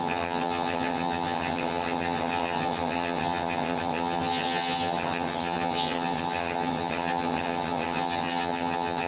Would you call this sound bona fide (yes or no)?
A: no